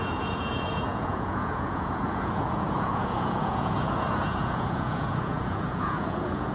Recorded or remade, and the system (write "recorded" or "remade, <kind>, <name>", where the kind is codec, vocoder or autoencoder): remade, vocoder, Vocos